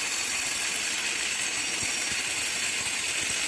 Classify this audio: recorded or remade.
recorded